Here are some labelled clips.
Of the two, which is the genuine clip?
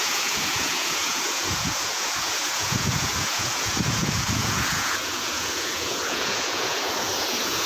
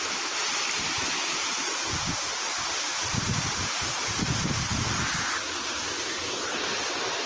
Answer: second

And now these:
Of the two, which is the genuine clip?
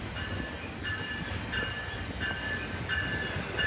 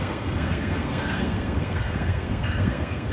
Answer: first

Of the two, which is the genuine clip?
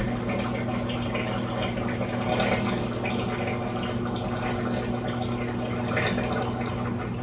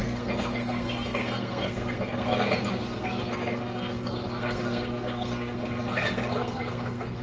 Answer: first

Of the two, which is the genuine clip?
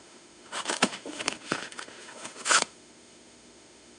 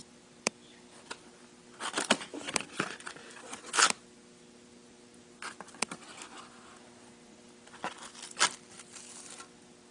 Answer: second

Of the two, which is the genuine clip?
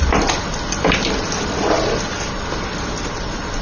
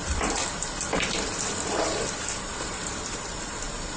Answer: first